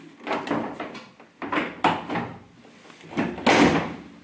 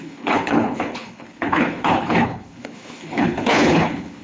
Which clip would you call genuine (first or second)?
first